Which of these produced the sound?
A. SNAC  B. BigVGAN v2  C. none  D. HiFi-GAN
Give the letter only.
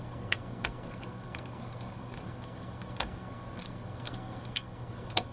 A